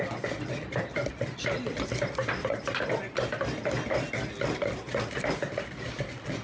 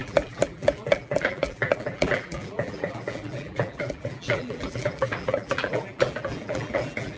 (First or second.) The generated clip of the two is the second